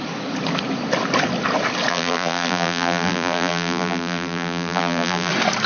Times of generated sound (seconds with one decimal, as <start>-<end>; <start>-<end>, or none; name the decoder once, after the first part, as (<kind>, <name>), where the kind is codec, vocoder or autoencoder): 1.9-5.3 (vocoder, BigVGAN v2)